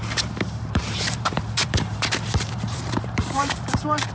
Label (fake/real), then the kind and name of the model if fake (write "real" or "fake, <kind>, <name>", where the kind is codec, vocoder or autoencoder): fake, vocoder, BigVGAN v2